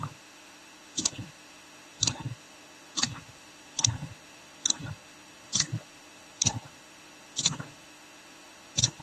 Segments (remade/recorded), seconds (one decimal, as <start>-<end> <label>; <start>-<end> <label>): 0.0-9.0 remade